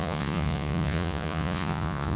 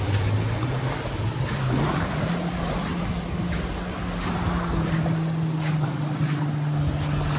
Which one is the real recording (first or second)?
second